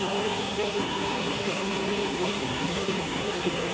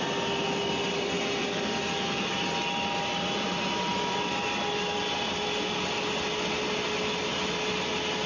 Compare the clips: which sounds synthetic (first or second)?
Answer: first